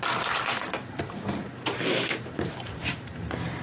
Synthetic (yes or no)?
no